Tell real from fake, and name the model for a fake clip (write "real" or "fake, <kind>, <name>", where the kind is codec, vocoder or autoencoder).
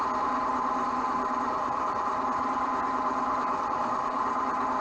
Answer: real